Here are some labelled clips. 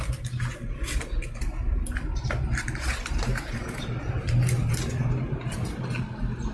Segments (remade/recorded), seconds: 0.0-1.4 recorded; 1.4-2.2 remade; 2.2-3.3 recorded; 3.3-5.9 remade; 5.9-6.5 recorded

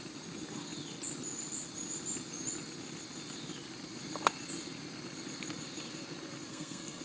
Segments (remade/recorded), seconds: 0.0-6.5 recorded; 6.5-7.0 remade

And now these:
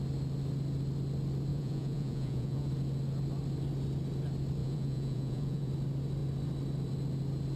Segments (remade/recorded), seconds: 0.0-1.5 recorded; 1.5-2.7 remade; 2.7-4.6 recorded; 4.6-5.7 remade; 5.7-7.6 recorded

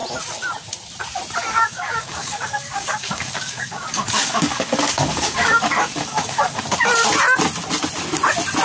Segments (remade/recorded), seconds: 0.0-1.5 recorded; 1.5-6.6 remade; 6.6-8.6 recorded

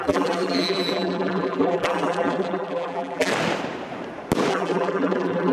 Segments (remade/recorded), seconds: 0.0-3.3 remade; 3.3-4.5 recorded; 4.5-5.5 remade

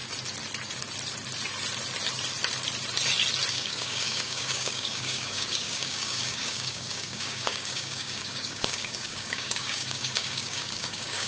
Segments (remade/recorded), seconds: 0.0-3.5 recorded; 3.5-11.3 remade

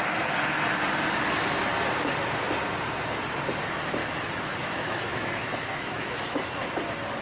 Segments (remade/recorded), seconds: 0.0-4.0 recorded; 4.0-6.5 remade; 6.5-7.2 recorded

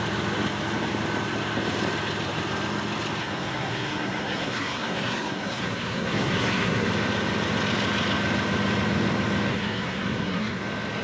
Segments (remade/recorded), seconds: 0.0-3.2 recorded; 3.2-6.9 remade; 6.9-9.5 recorded; 9.5-10.6 remade; 10.6-11.0 recorded